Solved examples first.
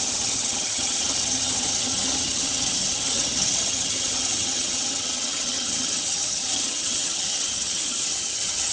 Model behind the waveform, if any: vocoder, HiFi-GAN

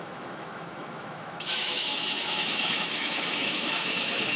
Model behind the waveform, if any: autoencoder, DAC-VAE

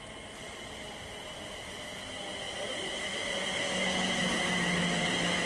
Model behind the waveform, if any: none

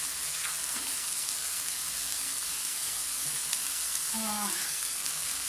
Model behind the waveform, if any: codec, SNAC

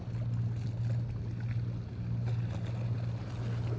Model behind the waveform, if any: none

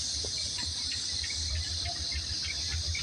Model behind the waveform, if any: none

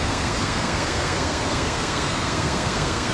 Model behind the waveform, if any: codec, SNAC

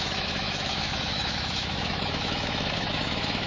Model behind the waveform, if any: autoencoder, DAC-VAE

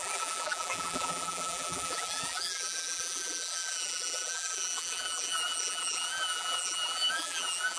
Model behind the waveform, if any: vocoder, BigVGAN v2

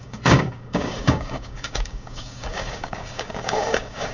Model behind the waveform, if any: codec, DAC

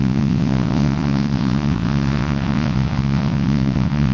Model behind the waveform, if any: vocoder, WaveNeXt